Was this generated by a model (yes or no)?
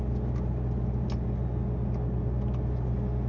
no